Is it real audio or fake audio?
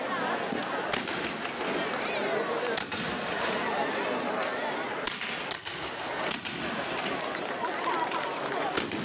real